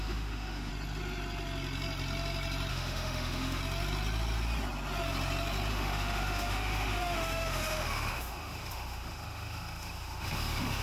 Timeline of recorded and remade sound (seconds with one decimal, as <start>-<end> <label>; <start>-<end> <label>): 0.0-0.7 remade; 0.7-2.7 recorded; 2.7-3.6 remade; 3.6-5.7 recorded; 5.7-10.8 remade